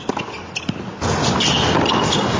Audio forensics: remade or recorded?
recorded